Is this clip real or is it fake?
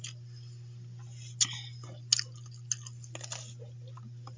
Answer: real